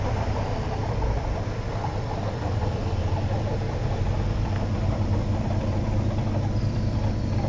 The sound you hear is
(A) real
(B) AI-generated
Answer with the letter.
B